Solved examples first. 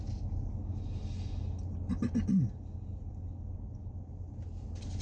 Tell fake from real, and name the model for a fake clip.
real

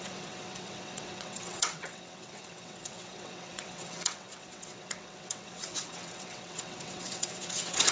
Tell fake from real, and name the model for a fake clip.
fake, vocoder, WaveNeXt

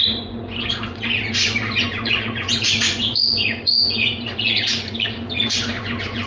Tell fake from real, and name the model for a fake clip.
fake, vocoder, Vocos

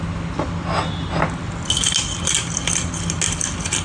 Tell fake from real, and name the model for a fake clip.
real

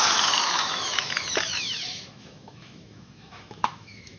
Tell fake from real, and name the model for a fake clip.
fake, autoencoder, DAC-VAE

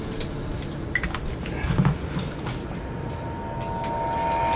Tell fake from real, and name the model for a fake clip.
real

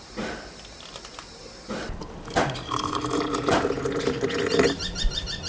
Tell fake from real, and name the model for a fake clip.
real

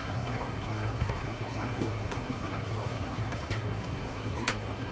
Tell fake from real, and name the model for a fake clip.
fake, codec, SNAC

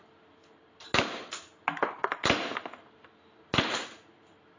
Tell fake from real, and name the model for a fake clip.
real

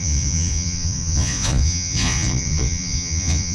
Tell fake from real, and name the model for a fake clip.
fake, vocoder, Vocos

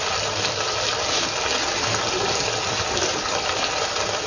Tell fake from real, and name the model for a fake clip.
real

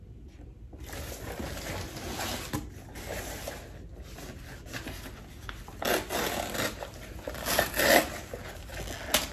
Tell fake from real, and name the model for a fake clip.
real